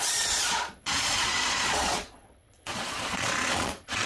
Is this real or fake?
fake